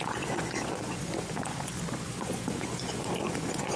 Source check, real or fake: fake